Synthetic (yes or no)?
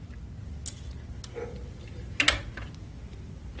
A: no